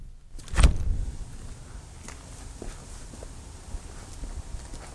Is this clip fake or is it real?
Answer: real